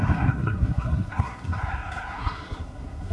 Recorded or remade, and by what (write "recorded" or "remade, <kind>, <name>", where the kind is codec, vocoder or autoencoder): remade, codec, SNAC